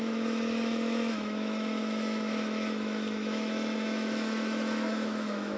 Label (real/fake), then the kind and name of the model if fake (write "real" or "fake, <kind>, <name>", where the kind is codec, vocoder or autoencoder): fake, autoencoder, DAC-VAE